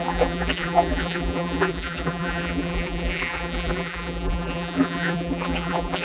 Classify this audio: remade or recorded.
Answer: remade